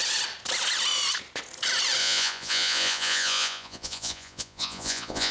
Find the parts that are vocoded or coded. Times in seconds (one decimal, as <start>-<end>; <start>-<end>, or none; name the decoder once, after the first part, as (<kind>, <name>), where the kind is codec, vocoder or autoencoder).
2.0-5.3 (vocoder, Vocos)